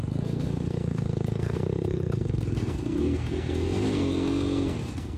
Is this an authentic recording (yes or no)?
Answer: no